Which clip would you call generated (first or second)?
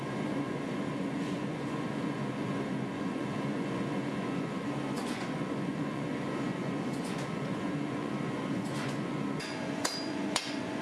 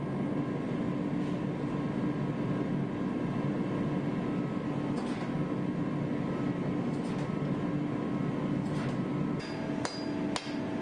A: first